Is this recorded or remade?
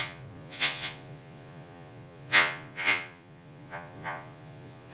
remade